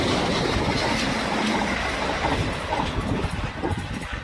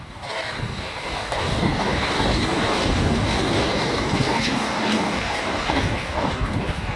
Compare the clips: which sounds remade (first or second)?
second